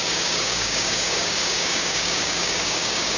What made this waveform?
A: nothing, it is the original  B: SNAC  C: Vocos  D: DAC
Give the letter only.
D